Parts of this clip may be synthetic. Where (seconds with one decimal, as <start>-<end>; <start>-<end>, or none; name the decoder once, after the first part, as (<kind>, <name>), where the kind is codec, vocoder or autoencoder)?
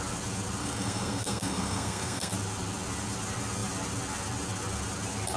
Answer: 0.6-2.3 (codec, SNAC)